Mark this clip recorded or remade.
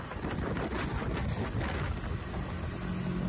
recorded